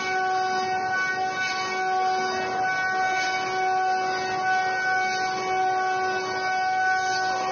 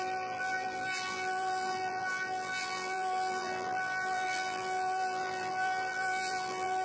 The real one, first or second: first